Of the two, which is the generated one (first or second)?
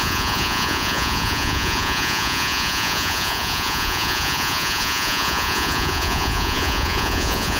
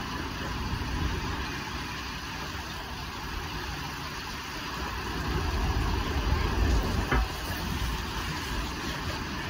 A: first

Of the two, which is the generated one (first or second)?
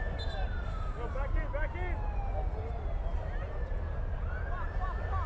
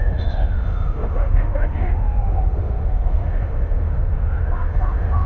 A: second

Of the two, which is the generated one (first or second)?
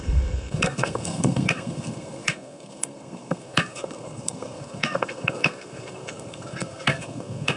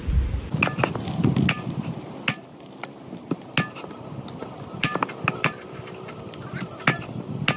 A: first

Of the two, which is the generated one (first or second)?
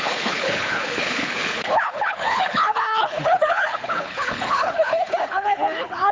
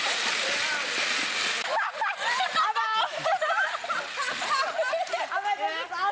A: first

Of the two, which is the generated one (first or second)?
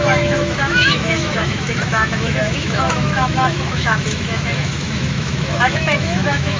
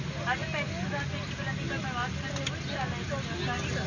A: first